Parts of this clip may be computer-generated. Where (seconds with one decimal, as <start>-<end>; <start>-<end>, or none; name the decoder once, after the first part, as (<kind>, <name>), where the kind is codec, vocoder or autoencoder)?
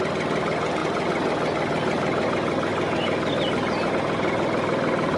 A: none